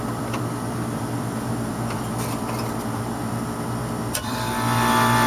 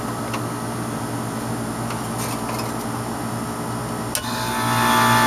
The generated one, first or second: first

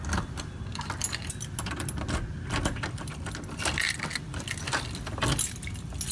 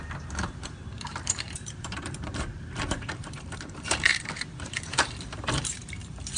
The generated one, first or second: second